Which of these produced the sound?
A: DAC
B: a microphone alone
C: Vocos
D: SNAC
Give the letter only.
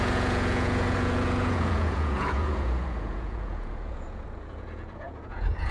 C